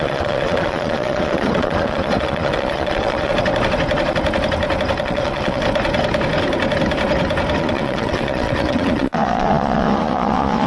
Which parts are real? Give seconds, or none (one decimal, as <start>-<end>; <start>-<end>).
3.3-5.0; 5.6-7.6